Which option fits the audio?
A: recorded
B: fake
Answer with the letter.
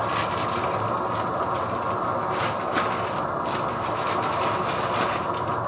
A